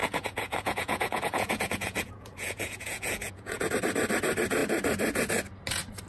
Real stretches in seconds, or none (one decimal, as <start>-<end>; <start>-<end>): 3.7-6.1